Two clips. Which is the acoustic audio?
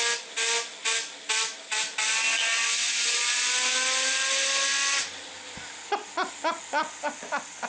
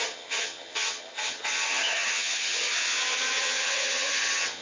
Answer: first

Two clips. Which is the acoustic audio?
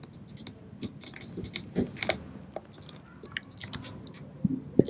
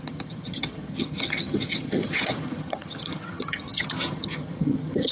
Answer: first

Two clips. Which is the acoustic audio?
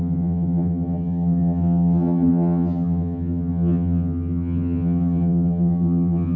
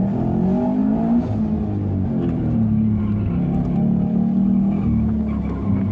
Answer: second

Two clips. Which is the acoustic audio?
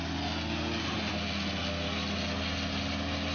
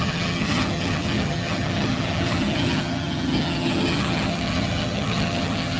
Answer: first